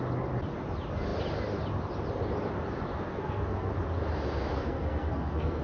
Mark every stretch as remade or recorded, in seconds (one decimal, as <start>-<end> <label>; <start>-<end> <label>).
0.0-3.1 recorded; 3.1-3.7 remade; 3.7-4.5 recorded; 4.5-5.6 remade